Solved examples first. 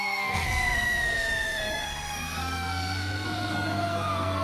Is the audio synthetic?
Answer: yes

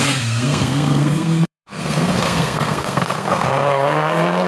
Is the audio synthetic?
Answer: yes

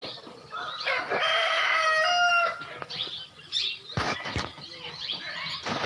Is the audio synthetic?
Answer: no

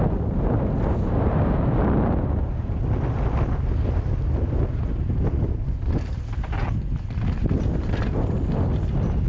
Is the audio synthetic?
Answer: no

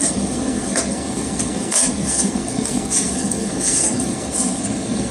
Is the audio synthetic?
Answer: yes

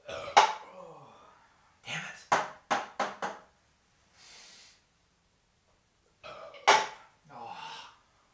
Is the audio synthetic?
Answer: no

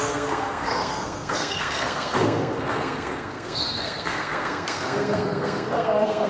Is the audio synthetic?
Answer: yes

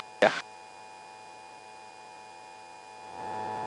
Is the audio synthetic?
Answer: no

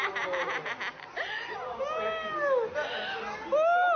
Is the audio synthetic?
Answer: no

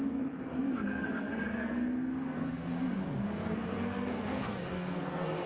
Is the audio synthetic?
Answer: yes